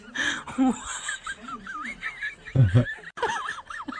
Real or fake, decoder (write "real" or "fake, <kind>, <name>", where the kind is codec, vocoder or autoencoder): real